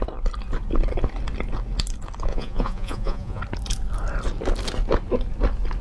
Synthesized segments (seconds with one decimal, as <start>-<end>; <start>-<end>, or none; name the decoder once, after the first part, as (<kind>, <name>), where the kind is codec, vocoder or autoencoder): 2.3-3.4 (vocoder, Vocos)

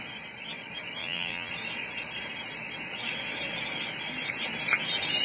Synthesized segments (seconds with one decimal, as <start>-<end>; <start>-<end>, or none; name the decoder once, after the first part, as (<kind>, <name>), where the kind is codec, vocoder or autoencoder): 1.0-1.5 (vocoder, BigVGAN v2)

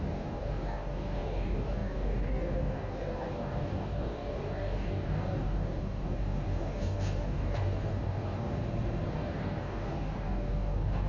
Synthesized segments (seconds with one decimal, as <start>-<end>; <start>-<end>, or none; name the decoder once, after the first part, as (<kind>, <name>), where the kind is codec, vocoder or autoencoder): 0.0-8.6 (codec, DAC); 9.1-11.1